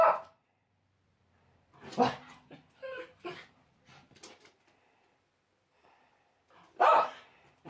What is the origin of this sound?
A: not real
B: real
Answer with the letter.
B